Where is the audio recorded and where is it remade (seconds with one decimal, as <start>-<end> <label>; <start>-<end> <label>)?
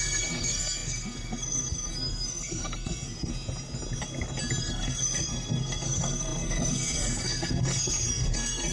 0.0-3.3 remade; 3.3-4.6 recorded; 4.6-8.7 remade